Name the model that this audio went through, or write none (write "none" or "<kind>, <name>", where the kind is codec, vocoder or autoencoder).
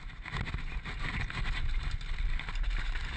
none